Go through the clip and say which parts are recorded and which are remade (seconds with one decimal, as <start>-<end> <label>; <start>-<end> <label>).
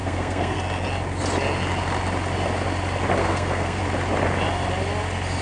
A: 0.0-0.6 remade; 0.6-3.2 recorded; 3.2-3.8 remade; 3.8-5.4 recorded